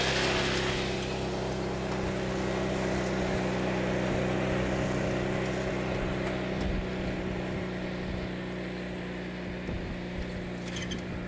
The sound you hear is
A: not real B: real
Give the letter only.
B